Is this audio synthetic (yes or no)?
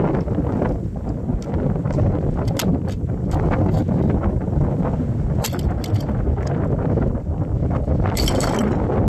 no